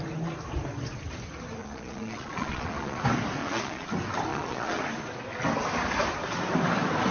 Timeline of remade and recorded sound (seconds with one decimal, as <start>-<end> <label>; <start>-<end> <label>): 0.0-1.6 recorded; 1.6-3.0 remade; 3.0-3.4 recorded; 3.4-3.9 remade; 3.9-4.3 recorded; 4.3-4.8 remade; 4.8-7.1 recorded